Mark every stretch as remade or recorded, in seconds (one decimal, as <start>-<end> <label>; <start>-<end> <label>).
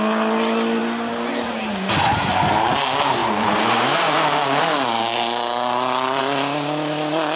0.0-3.2 recorded; 3.2-6.2 remade; 6.2-7.4 recorded